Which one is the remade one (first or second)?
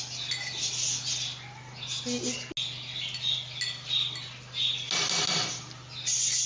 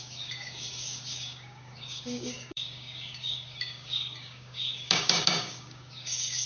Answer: second